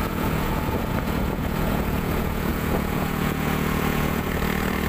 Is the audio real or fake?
fake